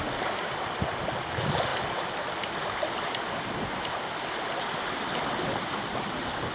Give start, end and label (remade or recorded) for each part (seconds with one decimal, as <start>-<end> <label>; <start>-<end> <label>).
0.0-6.5 recorded